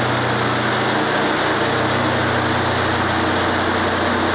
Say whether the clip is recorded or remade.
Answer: recorded